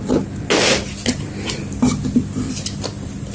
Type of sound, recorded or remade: recorded